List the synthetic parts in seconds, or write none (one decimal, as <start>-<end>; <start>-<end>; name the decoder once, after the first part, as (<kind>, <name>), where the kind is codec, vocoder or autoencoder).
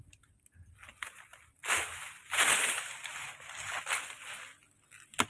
none